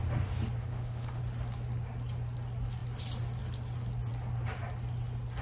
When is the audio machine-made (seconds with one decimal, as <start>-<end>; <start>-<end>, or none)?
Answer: 0.6-1.2